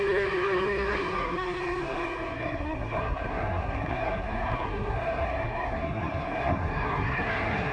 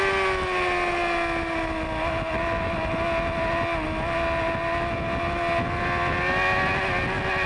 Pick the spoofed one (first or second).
first